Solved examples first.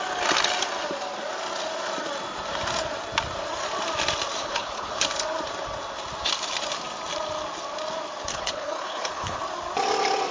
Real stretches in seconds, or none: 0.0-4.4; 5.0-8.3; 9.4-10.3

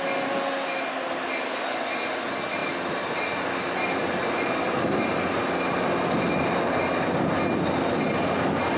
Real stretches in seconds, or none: 0.0-8.8

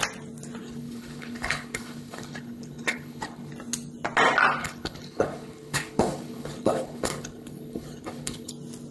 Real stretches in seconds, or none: 0.0-0.6; 3.5-4.6; 8.5-8.9

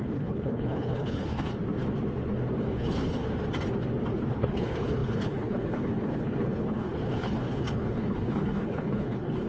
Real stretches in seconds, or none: 1.5-2.6; 3.2-4.3

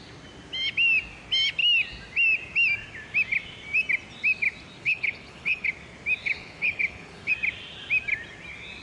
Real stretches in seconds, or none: 0.0-4.8; 5.7-6.2; 7.3-8.8

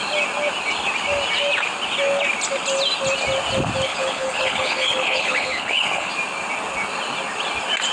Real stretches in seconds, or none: 0.0-3.9; 6.1-7.9

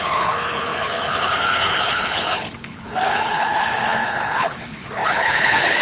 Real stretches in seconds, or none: none

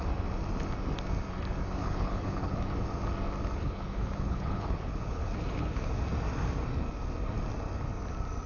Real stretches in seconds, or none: 0.0-1.8; 2.6-3.6; 5.9-8.5